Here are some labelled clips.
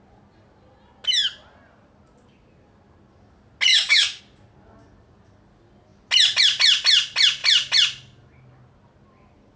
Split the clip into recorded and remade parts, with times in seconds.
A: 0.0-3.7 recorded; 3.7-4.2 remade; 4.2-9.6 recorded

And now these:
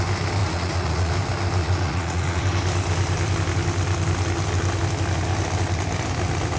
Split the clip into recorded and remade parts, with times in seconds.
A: 0.0-0.4 recorded; 0.4-1.1 remade; 1.1-1.6 recorded; 1.6-2.4 remade; 2.4-6.6 recorded

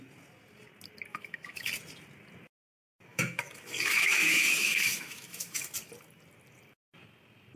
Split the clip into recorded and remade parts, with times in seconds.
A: 0.0-1.1 recorded; 1.1-1.7 remade; 1.7-3.1 recorded; 3.1-5.7 remade; 5.7-7.6 recorded

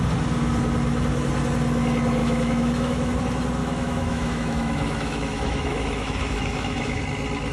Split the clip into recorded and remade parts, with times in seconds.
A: 0.0-2.2 recorded; 2.2-3.1 remade; 3.1-3.6 recorded; 3.6-7.0 remade; 7.0-7.5 recorded

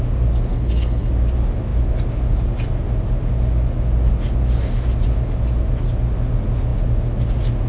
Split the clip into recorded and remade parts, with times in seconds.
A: 0.0-0.5 recorded; 0.5-1.1 remade; 1.1-7.7 recorded

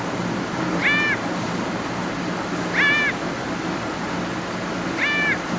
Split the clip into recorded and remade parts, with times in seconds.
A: 0.0-5.6 recorded

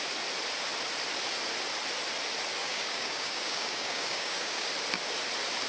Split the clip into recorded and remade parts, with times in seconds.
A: 0.0-2.6 recorded; 2.6-4.7 remade; 4.7-5.7 recorded

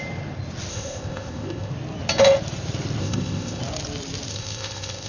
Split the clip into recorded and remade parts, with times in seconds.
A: 0.0-0.7 recorded; 0.7-1.7 remade; 1.7-3.0 recorded; 3.0-3.6 remade; 3.6-4.3 recorded; 4.3-5.1 remade